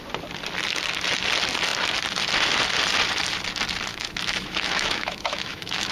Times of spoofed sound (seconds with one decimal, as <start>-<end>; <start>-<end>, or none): 3.9-5.9